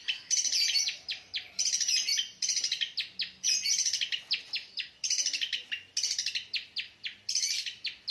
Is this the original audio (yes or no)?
yes